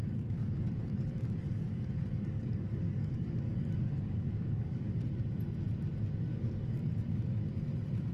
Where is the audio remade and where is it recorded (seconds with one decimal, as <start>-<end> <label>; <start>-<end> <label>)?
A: 0.0-4.9 remade; 4.9-6.3 recorded; 6.3-6.9 remade; 6.9-8.1 recorded